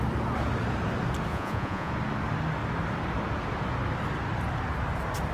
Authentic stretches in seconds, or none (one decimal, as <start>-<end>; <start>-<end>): 0.0-1.3; 1.9-5.3